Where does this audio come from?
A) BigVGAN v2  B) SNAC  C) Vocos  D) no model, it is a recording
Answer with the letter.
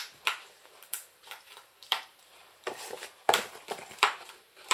A